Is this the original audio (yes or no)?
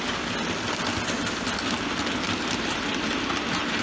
yes